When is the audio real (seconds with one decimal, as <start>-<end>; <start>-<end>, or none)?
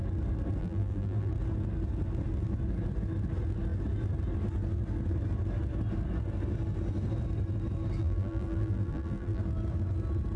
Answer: 0.0-0.6; 1.3-8.0; 9.4-10.4